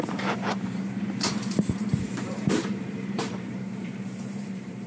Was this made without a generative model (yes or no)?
no